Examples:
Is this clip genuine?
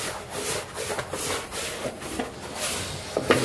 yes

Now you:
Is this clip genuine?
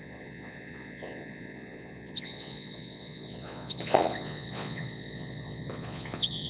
no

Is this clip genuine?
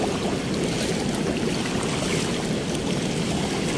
yes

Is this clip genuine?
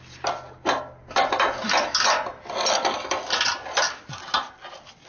yes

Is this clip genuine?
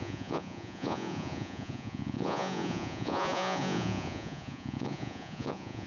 no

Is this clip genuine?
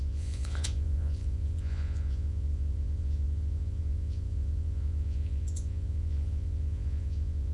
no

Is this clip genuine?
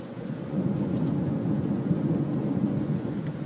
no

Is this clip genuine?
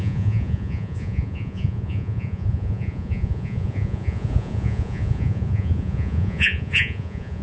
no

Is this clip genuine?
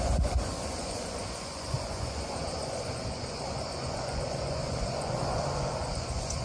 no